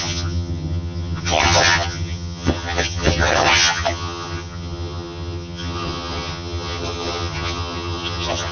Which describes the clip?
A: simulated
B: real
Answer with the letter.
A